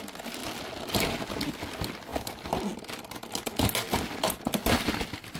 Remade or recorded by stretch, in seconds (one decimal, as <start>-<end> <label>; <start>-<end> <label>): 0.0-5.4 recorded